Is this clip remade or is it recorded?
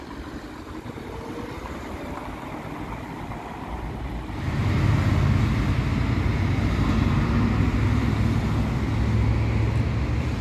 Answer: recorded